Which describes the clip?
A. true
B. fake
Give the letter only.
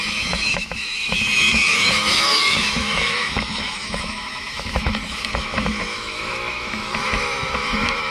B